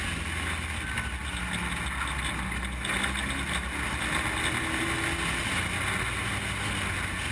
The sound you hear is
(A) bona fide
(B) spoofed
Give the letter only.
A